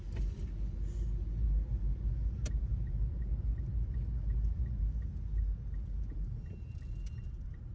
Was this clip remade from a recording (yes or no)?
no